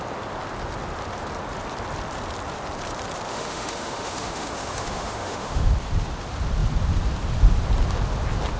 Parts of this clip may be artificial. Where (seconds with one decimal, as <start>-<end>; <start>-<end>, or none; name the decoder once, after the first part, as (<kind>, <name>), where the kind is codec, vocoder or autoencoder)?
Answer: 3.3-5.7 (autoencoder, DAC-VAE)